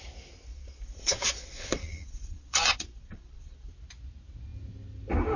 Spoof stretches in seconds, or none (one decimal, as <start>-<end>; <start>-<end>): 0.5-3.7